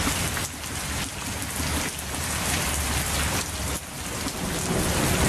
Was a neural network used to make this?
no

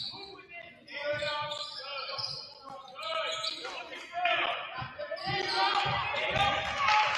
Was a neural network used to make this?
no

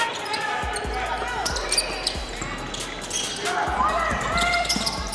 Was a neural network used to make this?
no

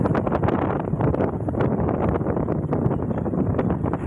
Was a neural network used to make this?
no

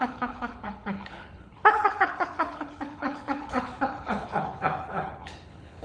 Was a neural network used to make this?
yes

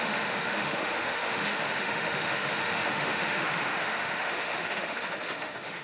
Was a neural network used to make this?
yes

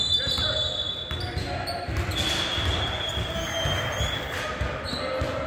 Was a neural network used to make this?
no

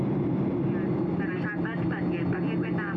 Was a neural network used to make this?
no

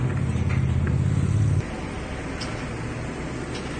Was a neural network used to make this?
no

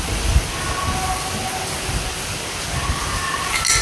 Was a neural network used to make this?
no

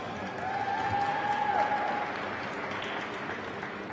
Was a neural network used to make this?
no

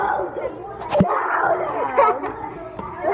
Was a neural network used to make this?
no